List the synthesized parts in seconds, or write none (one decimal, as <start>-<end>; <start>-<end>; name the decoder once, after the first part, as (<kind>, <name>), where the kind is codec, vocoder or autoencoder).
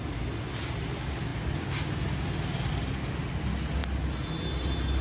none